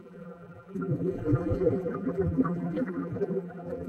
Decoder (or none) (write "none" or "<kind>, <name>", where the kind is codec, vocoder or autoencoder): vocoder, BigVGAN v2